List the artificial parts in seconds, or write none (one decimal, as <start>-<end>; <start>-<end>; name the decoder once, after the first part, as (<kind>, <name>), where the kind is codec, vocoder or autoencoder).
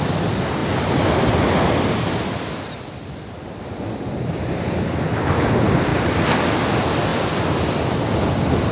none